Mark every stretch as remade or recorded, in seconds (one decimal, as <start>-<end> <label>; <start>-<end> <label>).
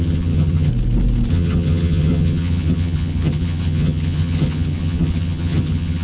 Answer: 0.0-0.7 remade; 0.7-1.3 recorded; 1.3-6.0 remade